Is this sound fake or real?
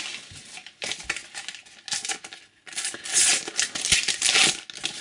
real